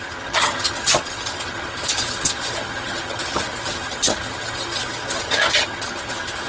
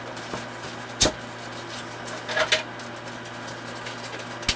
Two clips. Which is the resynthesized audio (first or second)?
first